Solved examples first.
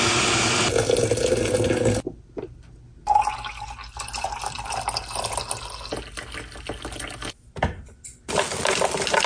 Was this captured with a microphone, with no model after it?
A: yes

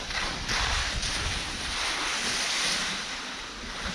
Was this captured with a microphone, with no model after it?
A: yes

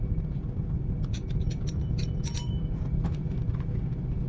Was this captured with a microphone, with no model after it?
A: yes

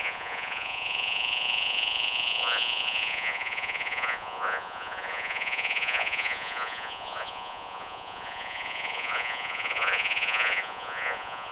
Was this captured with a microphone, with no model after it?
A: no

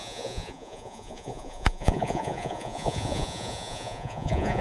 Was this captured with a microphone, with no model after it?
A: no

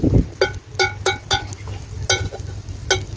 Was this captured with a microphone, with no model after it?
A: yes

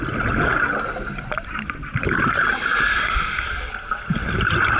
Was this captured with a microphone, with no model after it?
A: yes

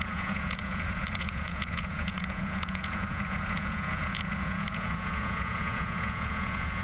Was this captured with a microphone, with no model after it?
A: no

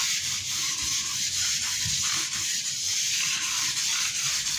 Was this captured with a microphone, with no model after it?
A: yes